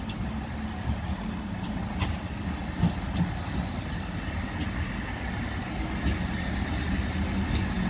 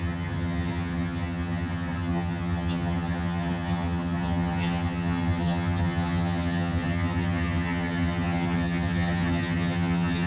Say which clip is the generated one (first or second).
second